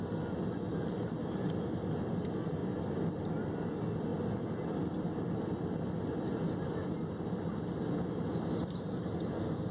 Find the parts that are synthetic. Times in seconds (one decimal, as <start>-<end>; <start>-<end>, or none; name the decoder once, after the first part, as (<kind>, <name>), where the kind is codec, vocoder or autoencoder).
none